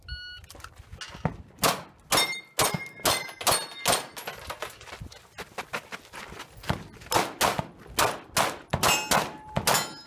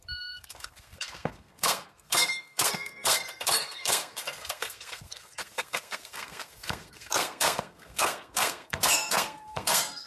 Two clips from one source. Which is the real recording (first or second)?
first